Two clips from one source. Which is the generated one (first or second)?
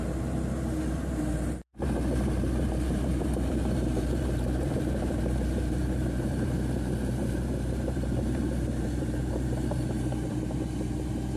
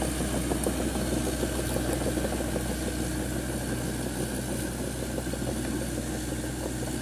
first